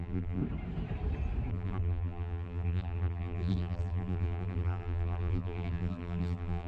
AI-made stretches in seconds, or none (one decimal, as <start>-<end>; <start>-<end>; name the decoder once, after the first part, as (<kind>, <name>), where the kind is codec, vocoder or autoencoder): 0.0-0.4 (vocoder, BigVGAN v2); 1.5-6.7